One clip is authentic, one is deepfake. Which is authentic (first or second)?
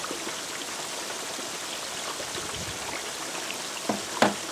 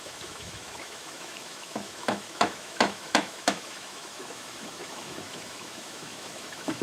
first